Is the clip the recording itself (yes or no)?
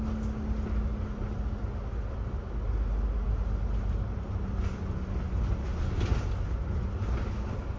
yes